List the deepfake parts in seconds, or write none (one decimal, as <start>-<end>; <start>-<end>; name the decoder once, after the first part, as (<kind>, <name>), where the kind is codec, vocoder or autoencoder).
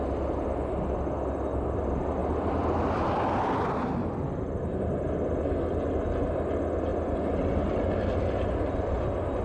none